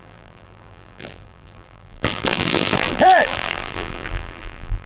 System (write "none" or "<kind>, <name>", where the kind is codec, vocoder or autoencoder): vocoder, BigVGAN v2